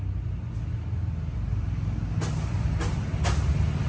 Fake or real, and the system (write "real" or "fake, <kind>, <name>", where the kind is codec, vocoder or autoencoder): real